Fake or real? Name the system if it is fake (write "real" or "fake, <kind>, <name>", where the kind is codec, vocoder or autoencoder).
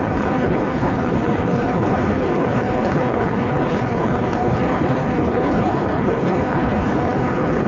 fake, codec, HILCodec